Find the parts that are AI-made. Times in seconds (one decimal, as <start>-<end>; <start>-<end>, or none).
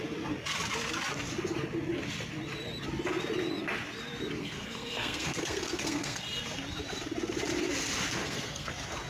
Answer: 4.4-6.2; 8.2-8.7